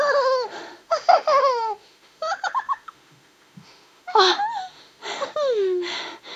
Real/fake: fake